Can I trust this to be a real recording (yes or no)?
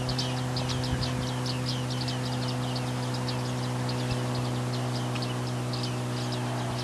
yes